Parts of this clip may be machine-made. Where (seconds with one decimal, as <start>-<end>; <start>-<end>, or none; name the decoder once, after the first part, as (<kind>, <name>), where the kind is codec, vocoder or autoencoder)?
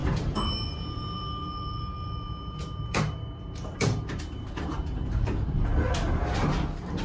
0.0-5.7 (vocoder, BigVGAN v2)